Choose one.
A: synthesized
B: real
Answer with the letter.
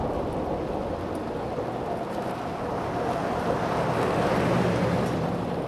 B